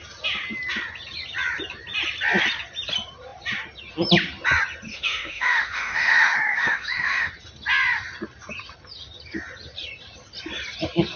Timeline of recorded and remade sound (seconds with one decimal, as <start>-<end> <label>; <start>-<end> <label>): 0.0-4.9 recorded; 4.9-7.3 remade; 7.3-11.2 recorded